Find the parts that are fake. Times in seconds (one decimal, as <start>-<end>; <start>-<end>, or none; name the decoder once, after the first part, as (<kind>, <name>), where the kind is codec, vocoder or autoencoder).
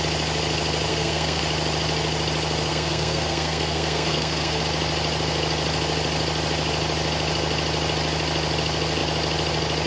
0.9-1.4 (codec, SNAC); 2.7-4.6